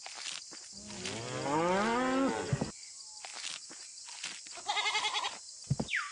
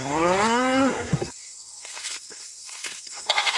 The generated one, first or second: second